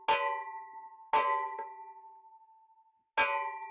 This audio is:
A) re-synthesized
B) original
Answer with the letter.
B